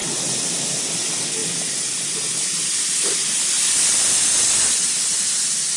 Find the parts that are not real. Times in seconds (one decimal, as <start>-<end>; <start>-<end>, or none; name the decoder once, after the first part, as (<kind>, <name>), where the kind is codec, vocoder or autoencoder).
none